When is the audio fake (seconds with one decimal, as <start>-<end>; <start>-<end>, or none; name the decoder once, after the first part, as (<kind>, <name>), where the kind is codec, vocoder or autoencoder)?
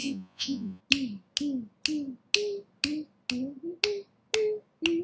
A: 0.0-0.8 (vocoder, Vocos)